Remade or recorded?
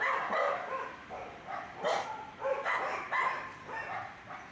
recorded